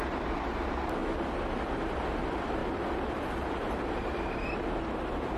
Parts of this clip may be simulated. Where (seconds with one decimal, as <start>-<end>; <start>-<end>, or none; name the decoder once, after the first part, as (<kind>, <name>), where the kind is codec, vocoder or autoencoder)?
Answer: 0.0-1.0 (vocoder, BigVGAN v2); 1.7-2.6; 3.2-5.4